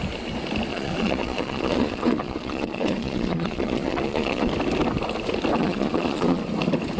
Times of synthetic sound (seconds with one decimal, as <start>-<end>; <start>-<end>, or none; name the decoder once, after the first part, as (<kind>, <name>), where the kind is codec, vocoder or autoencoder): 0.7-4.5 (vocoder, Vocos); 5.6-6.4